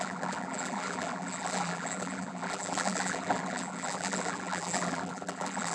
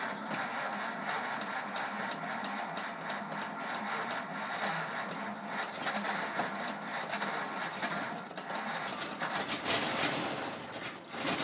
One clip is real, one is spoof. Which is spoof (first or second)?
first